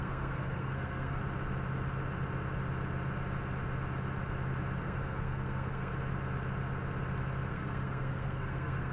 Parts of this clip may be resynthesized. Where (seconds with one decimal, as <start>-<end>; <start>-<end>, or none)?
0.0-1.2; 4.8-5.9; 7.5-8.9